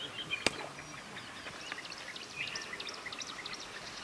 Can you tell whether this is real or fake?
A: real